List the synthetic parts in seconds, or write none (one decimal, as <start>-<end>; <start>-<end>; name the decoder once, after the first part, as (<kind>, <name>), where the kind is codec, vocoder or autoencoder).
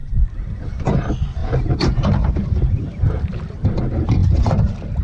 1.4-2.3 (vocoder, BigVGAN v2); 4.2-5.0